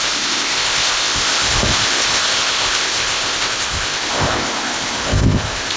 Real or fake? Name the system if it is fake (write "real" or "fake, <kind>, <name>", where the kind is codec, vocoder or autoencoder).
fake, codec, ZipCodec